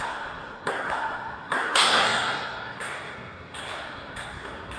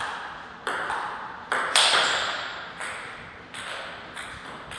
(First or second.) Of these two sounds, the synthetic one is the first